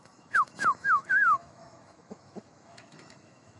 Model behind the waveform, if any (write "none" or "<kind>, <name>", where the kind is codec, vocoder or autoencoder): autoencoder, DAC-VAE